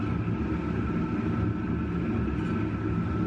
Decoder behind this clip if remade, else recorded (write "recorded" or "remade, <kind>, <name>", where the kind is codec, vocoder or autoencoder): recorded